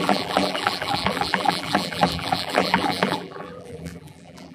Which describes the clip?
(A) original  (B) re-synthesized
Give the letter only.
B